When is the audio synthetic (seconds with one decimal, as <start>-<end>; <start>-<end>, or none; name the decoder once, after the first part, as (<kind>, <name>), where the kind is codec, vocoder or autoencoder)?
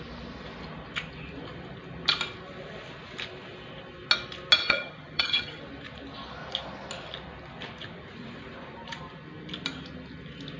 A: 4.6-5.6 (vocoder, HiFi-GAN)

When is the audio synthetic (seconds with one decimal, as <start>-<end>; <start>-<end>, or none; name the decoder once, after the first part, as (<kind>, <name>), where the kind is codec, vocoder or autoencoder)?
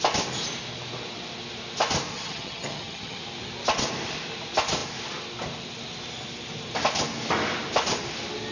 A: 2.1-3.2 (vocoder, HiFi-GAN)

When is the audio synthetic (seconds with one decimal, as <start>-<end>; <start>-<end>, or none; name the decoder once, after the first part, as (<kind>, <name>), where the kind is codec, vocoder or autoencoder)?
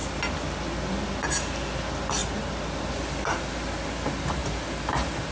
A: none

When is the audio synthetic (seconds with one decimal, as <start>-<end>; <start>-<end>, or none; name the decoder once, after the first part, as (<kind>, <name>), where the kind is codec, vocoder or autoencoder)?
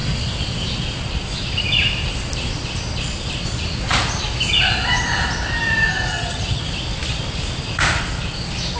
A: 6.1-6.6 (vocoder, HiFi-GAN)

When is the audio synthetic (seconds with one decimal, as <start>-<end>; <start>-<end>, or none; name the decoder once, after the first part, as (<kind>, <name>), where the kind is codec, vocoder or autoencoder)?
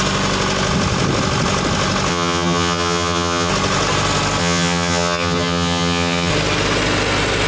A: 2.1-3.5 (vocoder, HiFi-GAN); 4.4-6.3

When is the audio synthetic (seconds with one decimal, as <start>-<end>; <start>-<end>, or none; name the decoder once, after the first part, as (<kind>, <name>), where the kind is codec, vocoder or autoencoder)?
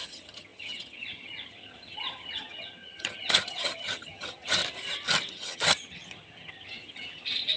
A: 0.0-4.6 (vocoder, HiFi-GAN); 5.3-7.6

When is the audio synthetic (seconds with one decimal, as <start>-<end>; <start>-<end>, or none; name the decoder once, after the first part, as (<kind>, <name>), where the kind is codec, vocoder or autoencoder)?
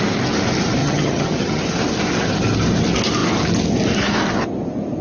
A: 0.8-1.6 (vocoder, HiFi-GAN)